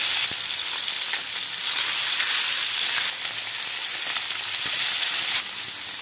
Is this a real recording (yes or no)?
yes